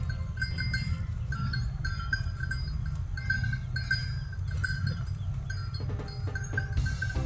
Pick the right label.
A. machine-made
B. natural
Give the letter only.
B